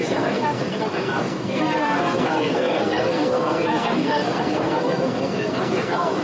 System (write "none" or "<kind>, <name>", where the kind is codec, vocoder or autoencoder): codec, SNAC